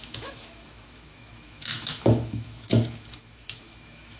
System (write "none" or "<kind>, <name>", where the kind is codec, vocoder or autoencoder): autoencoder, DAC-VAE